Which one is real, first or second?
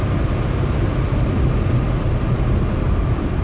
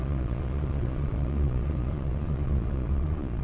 first